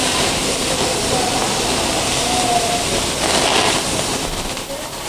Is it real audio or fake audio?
real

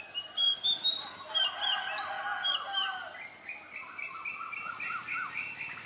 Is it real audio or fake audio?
real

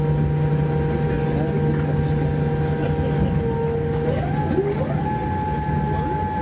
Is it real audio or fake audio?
real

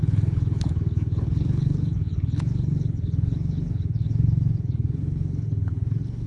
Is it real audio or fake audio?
fake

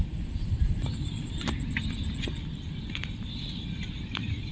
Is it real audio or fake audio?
real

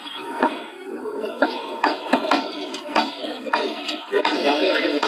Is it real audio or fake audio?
fake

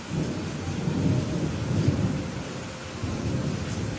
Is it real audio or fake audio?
real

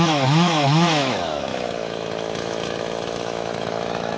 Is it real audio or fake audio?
fake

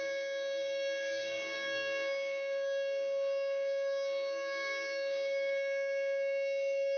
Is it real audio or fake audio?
fake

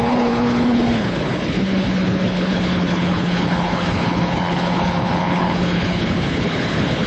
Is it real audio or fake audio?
fake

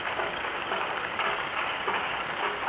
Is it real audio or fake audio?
fake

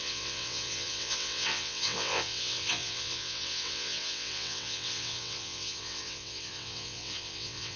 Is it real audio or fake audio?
fake